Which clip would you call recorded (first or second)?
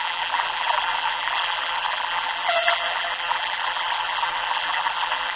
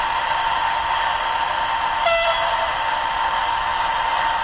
second